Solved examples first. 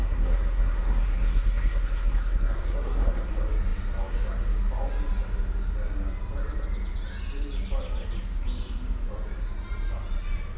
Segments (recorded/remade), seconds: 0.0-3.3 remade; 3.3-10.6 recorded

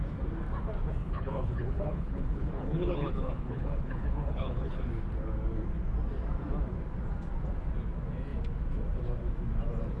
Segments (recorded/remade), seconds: 0.0-1.0 recorded; 1.0-4.9 remade; 4.9-10.0 recorded

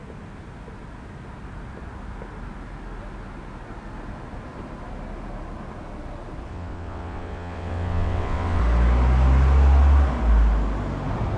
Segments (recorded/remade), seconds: 0.0-6.5 recorded; 6.5-8.6 remade; 8.6-11.4 recorded

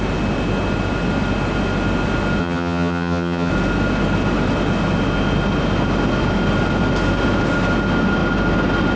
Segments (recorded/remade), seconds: 0.0-2.4 recorded; 2.4-3.5 remade; 3.5-9.0 recorded

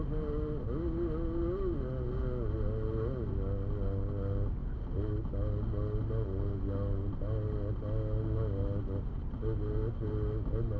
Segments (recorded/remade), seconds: 0.0-10.8 recorded

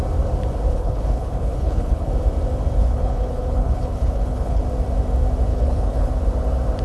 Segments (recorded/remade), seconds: 0.0-0.7 recorded; 0.7-2.1 remade; 2.1-2.8 recorded; 2.8-4.6 remade; 4.6-5.5 recorded; 5.5-6.1 remade; 6.1-6.8 recorded

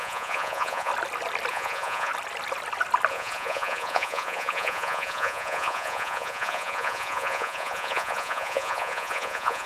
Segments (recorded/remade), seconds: 0.0-0.9 remade; 0.9-1.5 recorded; 1.5-2.1 remade; 2.1-3.1 recorded; 3.1-9.7 remade